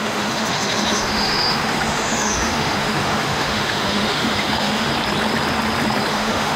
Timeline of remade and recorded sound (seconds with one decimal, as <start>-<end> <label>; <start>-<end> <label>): 0.0-4.9 remade; 4.9-6.1 recorded; 6.1-6.6 remade